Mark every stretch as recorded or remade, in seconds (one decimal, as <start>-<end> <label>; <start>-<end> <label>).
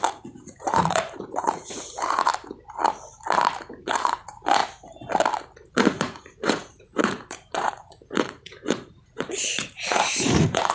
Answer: 0.0-2.3 remade; 2.3-3.8 recorded; 3.8-4.6 remade; 4.6-5.7 recorded; 5.7-10.7 remade